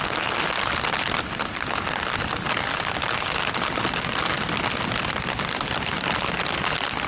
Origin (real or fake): real